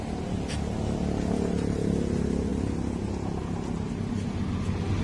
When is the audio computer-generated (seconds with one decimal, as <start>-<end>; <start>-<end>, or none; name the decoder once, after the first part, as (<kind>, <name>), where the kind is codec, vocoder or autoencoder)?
none